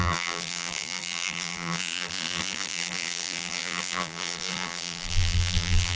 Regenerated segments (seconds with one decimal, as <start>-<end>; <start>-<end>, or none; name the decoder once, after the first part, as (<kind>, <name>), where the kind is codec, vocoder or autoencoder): 0.0-6.0 (vocoder, BigVGAN v2)